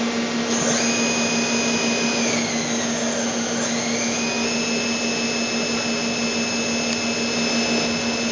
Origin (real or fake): real